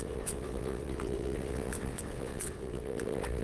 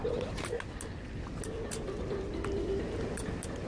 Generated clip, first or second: first